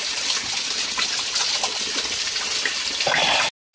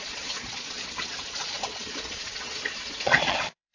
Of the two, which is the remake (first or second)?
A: second